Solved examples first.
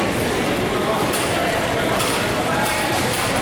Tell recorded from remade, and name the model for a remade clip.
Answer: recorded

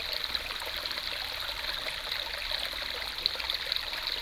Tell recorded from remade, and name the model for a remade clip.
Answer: recorded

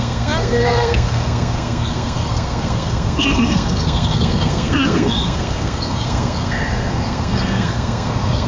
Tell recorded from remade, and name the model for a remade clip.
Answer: remade, codec, SNAC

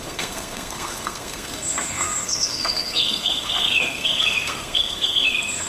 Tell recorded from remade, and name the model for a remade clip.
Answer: remade, codec, SNAC